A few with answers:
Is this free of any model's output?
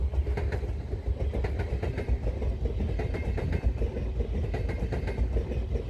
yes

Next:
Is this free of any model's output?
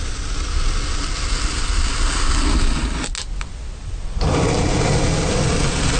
yes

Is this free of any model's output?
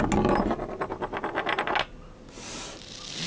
yes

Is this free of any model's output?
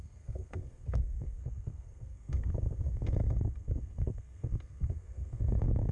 no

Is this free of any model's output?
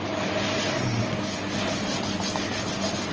yes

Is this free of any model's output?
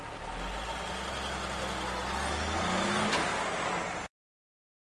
yes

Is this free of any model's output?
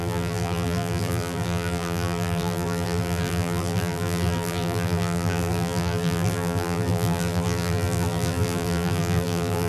no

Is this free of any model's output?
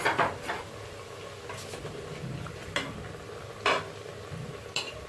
yes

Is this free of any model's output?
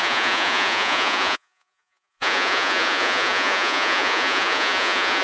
no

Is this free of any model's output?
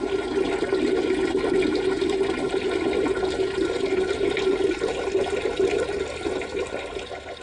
yes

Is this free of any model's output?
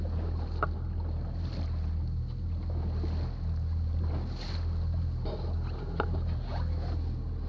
yes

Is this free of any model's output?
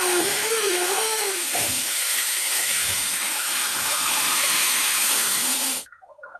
no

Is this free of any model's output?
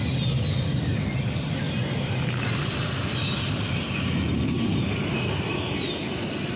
yes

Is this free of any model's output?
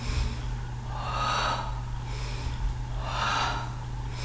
yes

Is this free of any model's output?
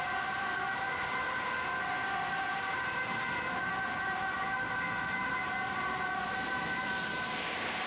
no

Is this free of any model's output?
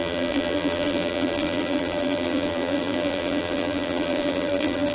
no